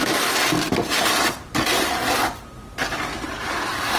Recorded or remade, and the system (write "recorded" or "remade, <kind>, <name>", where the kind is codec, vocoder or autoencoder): recorded